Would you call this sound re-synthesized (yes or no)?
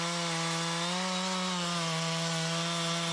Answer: no